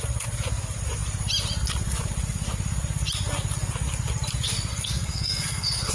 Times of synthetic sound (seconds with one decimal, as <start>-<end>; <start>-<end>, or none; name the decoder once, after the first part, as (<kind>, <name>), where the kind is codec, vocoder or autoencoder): 4.7-5.9 (codec, SNAC)